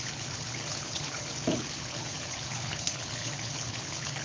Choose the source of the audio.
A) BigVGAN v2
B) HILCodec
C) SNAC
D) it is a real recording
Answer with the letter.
B